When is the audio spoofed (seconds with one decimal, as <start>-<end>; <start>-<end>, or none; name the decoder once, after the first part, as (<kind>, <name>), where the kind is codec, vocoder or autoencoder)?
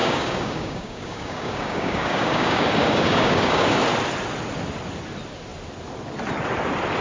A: 0.0-3.8 (codec, DAC)